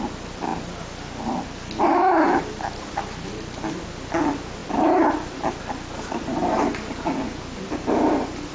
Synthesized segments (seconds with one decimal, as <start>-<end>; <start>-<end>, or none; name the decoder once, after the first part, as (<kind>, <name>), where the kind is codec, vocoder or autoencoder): none